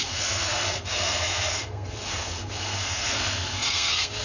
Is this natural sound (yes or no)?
no